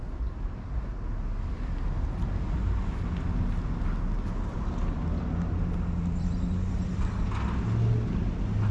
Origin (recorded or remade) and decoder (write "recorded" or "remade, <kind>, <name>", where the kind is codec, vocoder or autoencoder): recorded